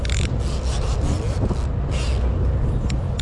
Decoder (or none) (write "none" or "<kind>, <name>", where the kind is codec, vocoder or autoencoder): none